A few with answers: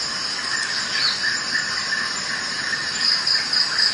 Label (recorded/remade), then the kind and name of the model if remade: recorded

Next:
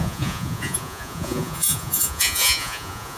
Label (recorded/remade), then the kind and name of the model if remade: remade, vocoder, Vocos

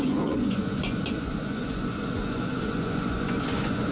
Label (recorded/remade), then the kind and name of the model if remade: remade, vocoder, Vocos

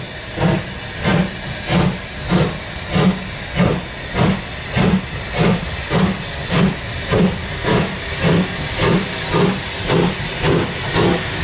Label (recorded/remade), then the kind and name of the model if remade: recorded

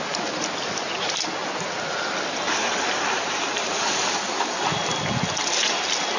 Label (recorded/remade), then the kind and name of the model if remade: recorded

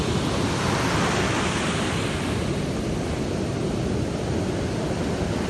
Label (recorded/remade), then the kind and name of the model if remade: recorded